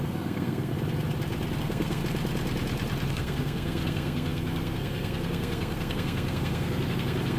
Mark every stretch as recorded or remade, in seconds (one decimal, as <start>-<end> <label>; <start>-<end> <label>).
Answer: 0.0-0.7 remade; 0.7-1.6 recorded; 1.6-2.0 remade; 2.0-3.1 recorded; 3.1-7.4 remade